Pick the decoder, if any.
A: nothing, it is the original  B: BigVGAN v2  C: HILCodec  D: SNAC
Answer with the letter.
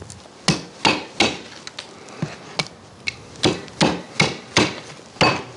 A